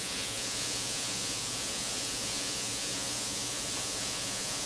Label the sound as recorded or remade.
remade